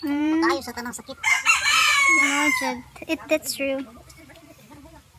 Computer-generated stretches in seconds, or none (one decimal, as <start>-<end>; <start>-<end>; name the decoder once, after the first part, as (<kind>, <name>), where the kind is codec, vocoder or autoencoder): 0.0-0.7 (vocoder, BigVGAN v2); 1.3-2.2; 4.2-5.2